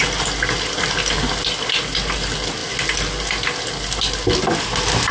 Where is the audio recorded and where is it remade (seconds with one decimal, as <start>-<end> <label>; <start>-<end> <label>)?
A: 0.0-5.1 recorded